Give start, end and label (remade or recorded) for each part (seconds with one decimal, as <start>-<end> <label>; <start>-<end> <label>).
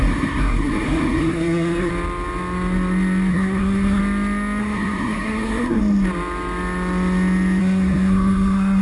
0.0-1.9 remade; 1.9-3.3 recorded; 3.3-4.0 remade; 4.0-4.6 recorded; 4.6-5.8 remade; 5.8-7.6 recorded; 7.6-8.8 remade